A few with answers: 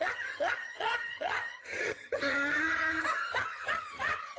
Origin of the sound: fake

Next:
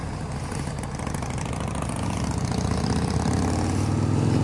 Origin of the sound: real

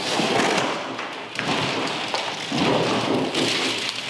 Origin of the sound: real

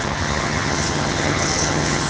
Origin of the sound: fake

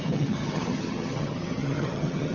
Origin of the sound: fake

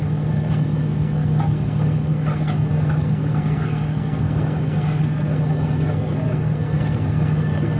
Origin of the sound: fake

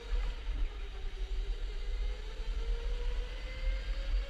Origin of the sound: real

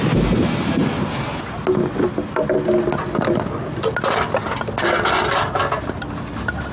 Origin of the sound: real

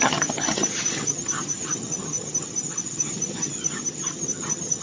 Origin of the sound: fake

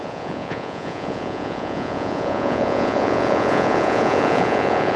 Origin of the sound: fake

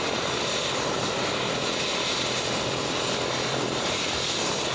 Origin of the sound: fake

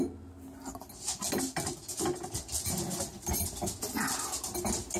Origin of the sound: real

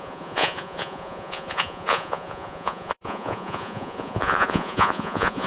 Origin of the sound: fake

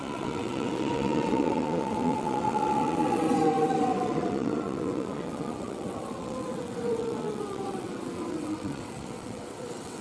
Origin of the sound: fake